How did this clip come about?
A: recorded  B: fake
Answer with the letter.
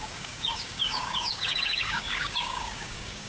B